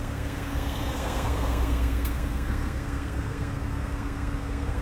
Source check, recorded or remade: remade